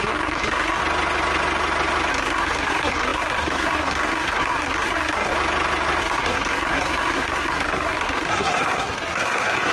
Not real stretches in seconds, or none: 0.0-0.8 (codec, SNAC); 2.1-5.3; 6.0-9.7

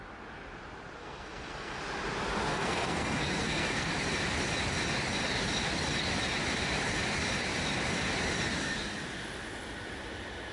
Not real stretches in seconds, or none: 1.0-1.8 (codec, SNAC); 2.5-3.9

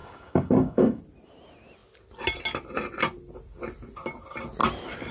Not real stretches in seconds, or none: 0.0-1.0 (codec, DAC)

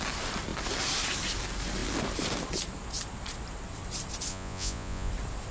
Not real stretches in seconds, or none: 4.3-5.1 (vocoder, Vocos)